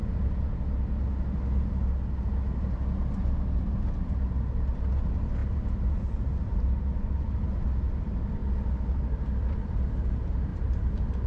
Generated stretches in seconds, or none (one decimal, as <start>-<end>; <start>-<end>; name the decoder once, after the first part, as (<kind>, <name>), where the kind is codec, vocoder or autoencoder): 8.4-10.1 (vocoder, BigVGAN v2); 10.5-11.3

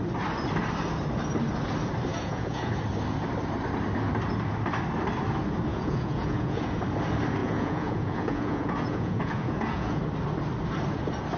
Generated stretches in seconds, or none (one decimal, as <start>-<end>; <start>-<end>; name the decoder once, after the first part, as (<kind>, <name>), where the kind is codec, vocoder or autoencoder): 2.1-2.7 (vocoder, Vocos); 5.7-6.7; 7.4-10.0

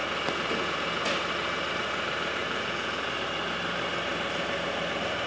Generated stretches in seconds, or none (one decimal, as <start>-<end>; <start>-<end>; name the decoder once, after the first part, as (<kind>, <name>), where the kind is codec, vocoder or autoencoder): 1.7-2.4 (vocoder, BigVGAN v2); 4.1-5.3

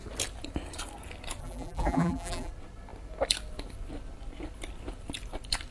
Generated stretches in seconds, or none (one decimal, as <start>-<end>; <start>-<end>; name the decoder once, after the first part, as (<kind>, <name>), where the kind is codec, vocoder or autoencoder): 1.4-2.5 (vocoder, BigVGAN v2)

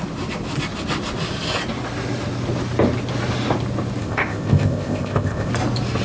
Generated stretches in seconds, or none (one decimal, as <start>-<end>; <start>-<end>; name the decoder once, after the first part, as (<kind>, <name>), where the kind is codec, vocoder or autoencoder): 4.0-5.5 (codec, ZipCodec)